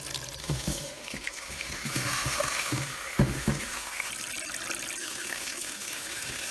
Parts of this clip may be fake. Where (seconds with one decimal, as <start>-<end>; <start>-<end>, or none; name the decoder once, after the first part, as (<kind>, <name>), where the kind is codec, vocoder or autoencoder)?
0.4-4.1 (autoencoder, DAC-VAE); 5.0-6.5